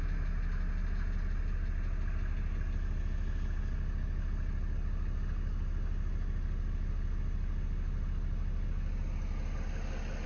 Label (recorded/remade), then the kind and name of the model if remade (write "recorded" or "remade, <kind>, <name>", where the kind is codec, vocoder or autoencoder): recorded